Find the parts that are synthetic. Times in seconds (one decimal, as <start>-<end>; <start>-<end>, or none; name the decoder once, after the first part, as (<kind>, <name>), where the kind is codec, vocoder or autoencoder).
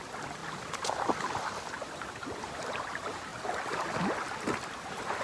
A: none